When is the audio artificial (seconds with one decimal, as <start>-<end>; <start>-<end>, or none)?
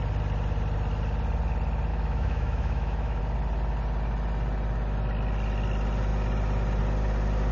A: 1.9-3.2